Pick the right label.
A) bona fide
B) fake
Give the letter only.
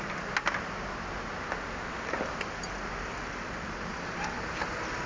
A